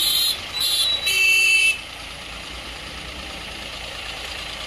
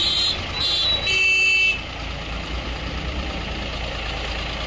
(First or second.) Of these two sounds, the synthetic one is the first